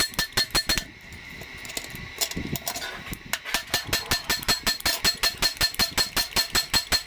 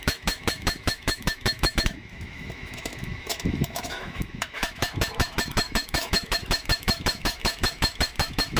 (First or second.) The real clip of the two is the first